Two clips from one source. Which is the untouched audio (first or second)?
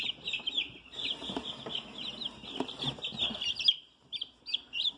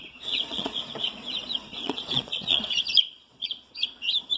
first